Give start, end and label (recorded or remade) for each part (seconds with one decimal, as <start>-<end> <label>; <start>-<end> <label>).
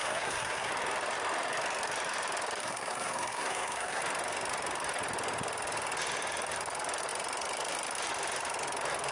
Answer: 0.0-0.7 remade; 0.7-2.6 recorded; 2.6-4.0 remade; 4.0-9.1 recorded